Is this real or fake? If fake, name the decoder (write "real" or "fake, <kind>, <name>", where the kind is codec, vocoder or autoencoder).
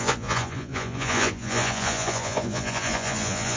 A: fake, vocoder, Vocos